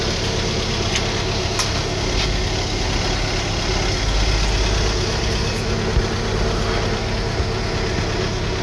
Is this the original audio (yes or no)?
yes